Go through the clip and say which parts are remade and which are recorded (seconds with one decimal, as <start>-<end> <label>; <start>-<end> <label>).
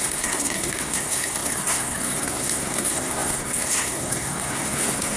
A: 0.0-5.2 remade